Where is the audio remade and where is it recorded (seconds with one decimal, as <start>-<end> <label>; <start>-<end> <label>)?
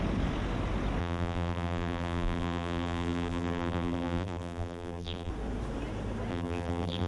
0.0-1.0 recorded; 1.0-5.3 remade; 5.3-6.3 recorded; 6.3-7.1 remade